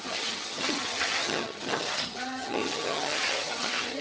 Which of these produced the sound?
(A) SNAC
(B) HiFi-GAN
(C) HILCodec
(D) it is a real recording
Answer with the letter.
B